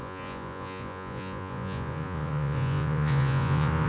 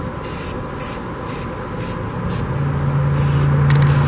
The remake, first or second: first